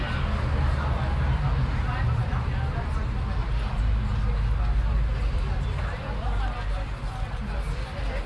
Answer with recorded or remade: recorded